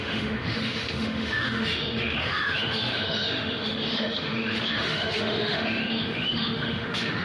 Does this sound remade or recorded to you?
remade